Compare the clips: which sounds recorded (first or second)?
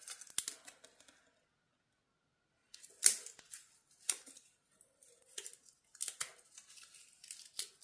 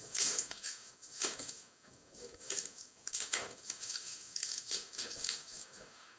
first